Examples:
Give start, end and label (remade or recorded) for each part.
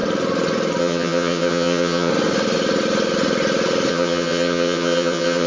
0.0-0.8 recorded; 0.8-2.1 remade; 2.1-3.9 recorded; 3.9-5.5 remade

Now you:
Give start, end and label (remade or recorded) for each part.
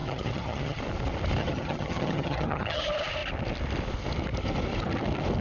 0.0-0.8 remade; 0.8-1.4 recorded; 1.4-2.8 remade; 2.8-5.4 recorded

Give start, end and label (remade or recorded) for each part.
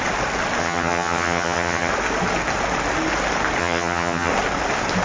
0.0-0.6 recorded; 0.6-1.9 remade; 1.9-3.6 recorded; 3.6-4.3 remade; 4.3-5.0 recorded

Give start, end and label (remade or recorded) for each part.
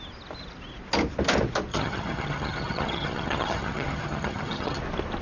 0.0-1.7 recorded; 1.7-4.8 remade; 4.8-5.2 recorded